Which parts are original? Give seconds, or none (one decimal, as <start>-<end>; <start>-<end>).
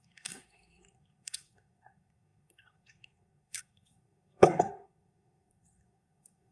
none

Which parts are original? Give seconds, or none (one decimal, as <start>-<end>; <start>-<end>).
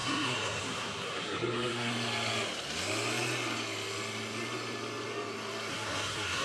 1.9-5.7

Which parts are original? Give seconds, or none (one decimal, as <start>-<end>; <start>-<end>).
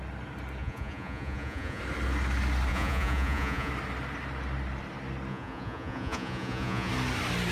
0.0-0.6; 1.8-2.7; 3.7-5.3; 6.9-7.5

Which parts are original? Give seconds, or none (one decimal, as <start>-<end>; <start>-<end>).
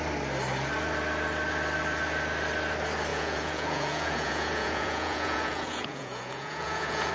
0.0-3.1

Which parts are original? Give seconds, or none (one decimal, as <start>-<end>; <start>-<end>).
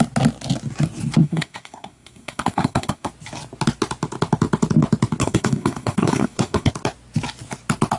0.0-1.2; 3.1-5.2; 6.7-8.0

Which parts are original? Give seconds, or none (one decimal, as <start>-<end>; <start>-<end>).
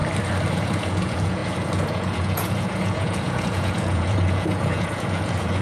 0.0-0.5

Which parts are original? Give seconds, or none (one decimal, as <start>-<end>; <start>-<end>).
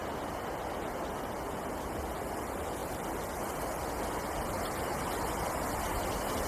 0.0-6.5